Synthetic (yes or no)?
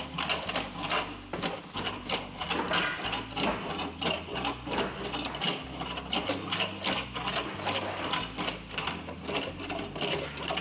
no